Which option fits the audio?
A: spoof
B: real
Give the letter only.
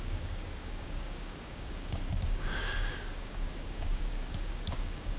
A